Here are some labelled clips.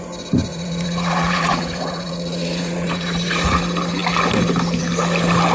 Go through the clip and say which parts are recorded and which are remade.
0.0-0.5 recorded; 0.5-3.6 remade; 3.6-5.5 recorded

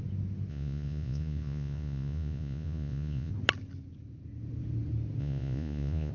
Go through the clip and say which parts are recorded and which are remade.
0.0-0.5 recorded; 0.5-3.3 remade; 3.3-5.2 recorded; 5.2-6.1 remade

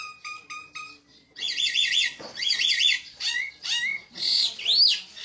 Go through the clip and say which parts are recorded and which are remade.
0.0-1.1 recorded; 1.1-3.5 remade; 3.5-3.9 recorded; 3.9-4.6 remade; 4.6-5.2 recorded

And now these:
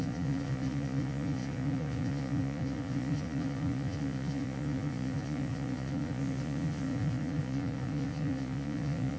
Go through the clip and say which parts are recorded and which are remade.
0.0-9.2 remade

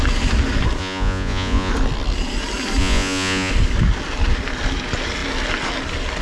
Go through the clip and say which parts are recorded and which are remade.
0.0-0.8 recorded; 0.8-1.7 remade; 1.7-2.8 recorded; 2.8-3.5 remade; 3.5-6.2 recorded